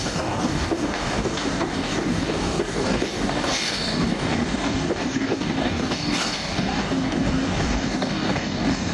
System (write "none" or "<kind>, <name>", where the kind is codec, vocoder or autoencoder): codec, DAC